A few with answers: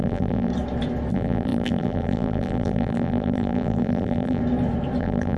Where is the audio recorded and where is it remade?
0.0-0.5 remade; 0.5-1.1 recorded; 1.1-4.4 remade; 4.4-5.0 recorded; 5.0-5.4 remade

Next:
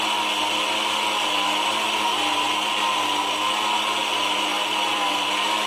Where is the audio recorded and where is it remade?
0.0-4.5 recorded; 4.5-5.7 remade

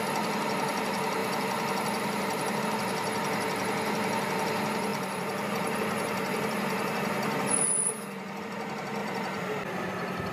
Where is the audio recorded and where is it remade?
0.0-1.2 recorded; 1.2-2.6 remade; 2.6-4.9 recorded; 4.9-8.4 remade; 8.4-9.0 recorded; 9.0-10.3 remade

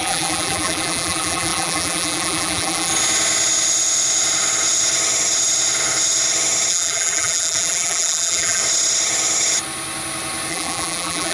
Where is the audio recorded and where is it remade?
0.0-2.9 remade; 2.9-6.7 recorded; 6.7-8.6 remade; 8.6-10.5 recorded; 10.5-11.3 remade

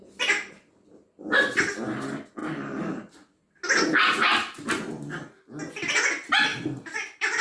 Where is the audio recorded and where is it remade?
0.0-2.4 recorded; 2.4-3.4 remade; 3.4-6.5 recorded; 6.5-7.4 remade